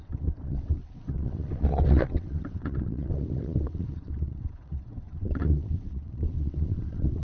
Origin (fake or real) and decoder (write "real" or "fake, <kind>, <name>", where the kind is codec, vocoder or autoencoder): fake, vocoder, WaveNeXt